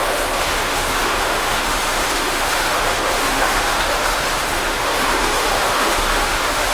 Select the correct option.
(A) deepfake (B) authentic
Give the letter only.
A